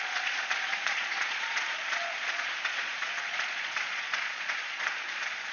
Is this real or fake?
fake